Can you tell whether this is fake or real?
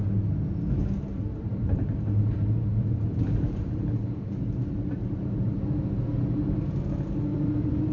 fake